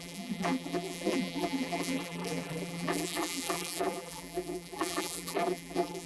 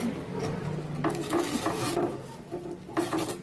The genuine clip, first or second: second